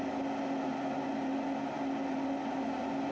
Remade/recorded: recorded